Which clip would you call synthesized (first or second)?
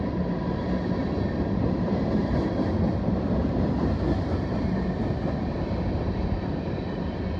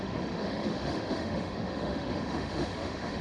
second